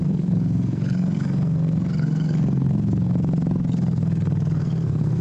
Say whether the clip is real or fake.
fake